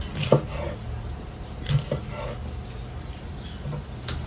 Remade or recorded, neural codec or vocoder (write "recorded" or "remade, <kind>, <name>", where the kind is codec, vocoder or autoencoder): recorded